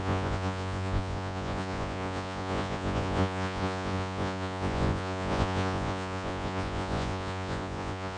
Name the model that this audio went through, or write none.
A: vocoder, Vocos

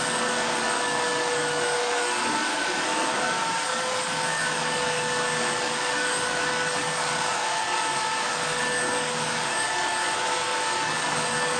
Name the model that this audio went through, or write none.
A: codec, DAC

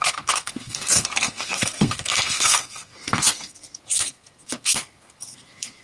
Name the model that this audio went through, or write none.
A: codec, SNAC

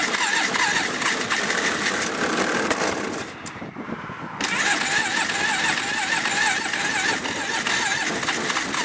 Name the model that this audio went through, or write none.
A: none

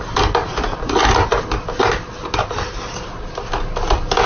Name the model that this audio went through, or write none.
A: none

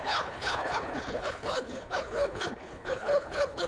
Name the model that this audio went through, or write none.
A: codec, HILCodec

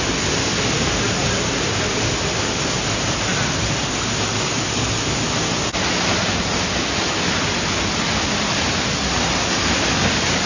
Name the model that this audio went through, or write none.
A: none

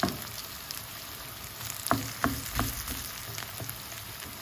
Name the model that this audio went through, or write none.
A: none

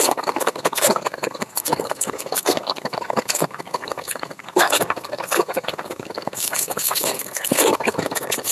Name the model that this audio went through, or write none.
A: codec, SNAC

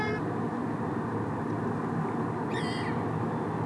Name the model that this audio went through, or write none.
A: none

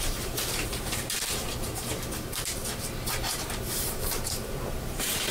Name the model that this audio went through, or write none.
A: vocoder, BigVGAN v2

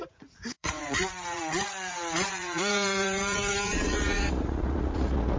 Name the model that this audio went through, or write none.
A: vocoder, Vocos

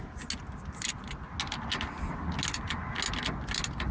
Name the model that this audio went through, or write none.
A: none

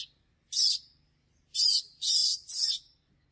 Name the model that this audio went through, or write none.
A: none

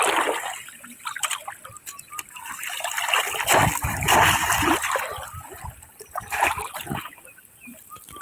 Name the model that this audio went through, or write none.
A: none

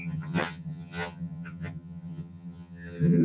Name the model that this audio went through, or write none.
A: vocoder, HiFi-GAN